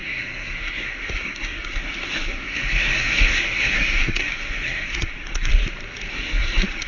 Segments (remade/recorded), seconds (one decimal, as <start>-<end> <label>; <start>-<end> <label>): 0.0-5.5 remade; 5.5-6.1 recorded; 6.1-6.9 remade